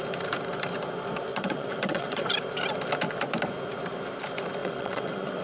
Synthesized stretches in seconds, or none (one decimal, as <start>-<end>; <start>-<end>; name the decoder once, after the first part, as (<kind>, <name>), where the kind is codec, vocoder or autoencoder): 1.3-2.2 (vocoder, WaveNeXt); 4.6-5.4

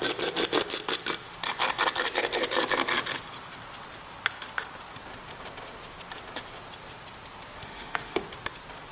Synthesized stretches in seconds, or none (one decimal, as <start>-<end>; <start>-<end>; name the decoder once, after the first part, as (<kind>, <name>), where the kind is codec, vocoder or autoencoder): 7.6-8.2 (autoencoder, DAC-VAE)

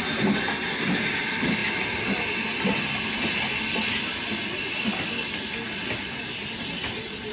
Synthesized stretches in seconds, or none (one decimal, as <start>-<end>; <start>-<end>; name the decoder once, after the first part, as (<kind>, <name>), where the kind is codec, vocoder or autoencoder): none

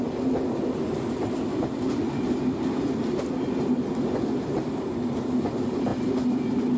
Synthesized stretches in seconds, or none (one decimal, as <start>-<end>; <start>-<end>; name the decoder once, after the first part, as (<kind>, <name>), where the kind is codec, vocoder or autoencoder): none

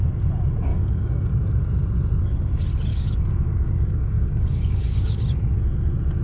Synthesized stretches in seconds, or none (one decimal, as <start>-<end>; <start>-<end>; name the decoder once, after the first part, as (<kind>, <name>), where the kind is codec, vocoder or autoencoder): 0.7-1.3 (codec, DAC); 2.9-5.2

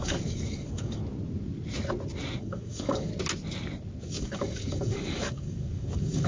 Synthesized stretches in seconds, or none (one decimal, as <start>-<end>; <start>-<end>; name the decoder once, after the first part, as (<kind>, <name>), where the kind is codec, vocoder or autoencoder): 0.0-1.0 (codec, DAC); 2.4-3.1; 4.0-6.3

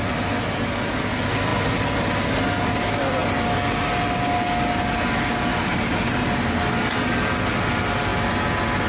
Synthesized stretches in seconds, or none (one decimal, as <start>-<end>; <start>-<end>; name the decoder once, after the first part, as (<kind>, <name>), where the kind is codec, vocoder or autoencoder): none